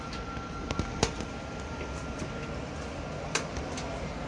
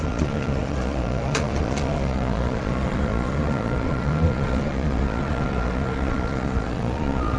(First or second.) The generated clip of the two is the second